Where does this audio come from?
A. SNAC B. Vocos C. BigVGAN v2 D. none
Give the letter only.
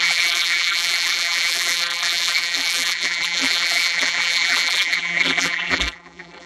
C